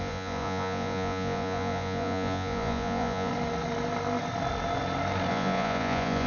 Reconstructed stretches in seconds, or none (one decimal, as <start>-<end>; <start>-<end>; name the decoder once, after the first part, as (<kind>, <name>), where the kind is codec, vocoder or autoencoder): 0.0-3.3 (vocoder, Vocos); 5.3-6.3